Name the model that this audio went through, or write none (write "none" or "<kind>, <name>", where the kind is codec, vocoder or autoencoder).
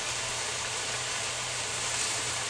vocoder, BigVGAN v2